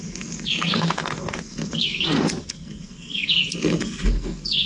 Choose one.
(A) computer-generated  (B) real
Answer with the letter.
A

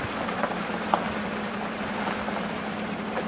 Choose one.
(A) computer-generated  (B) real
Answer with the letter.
B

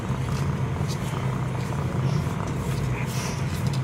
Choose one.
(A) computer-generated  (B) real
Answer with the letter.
B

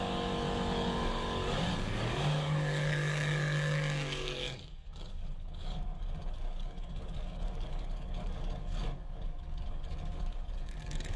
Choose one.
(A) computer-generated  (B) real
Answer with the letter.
A